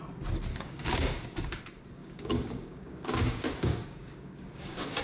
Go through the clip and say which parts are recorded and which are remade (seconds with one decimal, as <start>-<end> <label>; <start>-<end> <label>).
0.0-0.5 recorded; 0.5-1.6 remade; 1.6-2.0 recorded; 2.0-5.0 remade